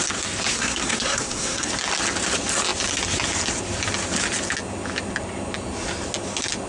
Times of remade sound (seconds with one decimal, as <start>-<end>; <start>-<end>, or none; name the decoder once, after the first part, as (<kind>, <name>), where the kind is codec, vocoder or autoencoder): 0.5-1.7 (codec, SNAC)